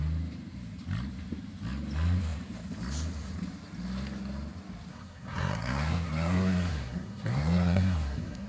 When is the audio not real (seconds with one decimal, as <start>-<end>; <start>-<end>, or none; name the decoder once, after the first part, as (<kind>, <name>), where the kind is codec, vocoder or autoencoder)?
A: 4.9-8.5 (codec, SNAC)